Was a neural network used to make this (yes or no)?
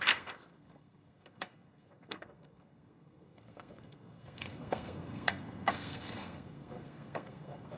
yes